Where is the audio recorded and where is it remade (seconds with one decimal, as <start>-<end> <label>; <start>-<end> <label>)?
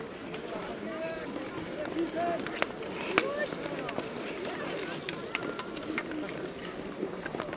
0.0-0.6 recorded; 0.6-1.5 remade; 1.5-6.6 recorded; 6.6-7.6 remade